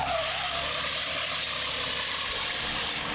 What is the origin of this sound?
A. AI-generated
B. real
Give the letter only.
B